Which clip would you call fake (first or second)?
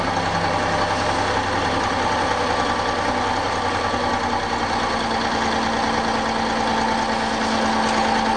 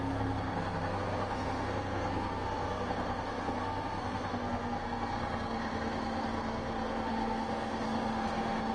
second